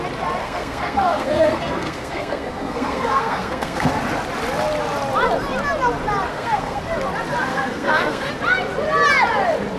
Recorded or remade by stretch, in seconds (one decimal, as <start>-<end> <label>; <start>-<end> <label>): 0.0-0.4 recorded; 0.4-3.9 remade; 3.9-6.3 recorded; 6.3-6.8 remade; 6.8-7.5 recorded; 7.5-8.3 remade; 8.3-9.8 recorded